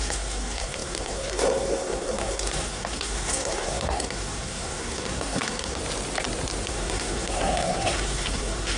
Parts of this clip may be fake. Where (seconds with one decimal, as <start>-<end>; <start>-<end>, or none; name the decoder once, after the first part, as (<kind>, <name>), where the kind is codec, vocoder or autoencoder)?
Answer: 0.0-5.8 (codec, SNAC); 6.7-8.8